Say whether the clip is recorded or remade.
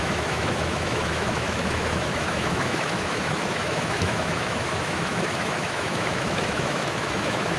remade